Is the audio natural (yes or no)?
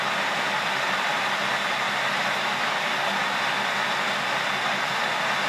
yes